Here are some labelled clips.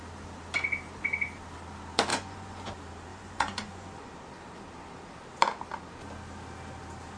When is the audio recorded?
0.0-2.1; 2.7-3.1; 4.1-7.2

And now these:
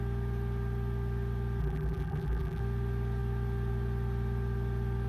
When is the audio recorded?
0.0-1.6; 2.6-5.1

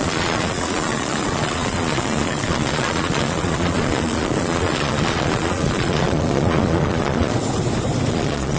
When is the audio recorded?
7.4-8.1

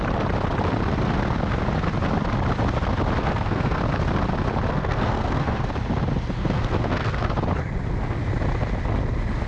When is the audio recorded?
0.0-3.2; 3.8-4.7; 5.7-6.4; 7.3-9.5

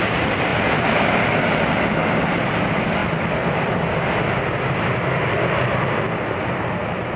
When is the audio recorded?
0.0-7.2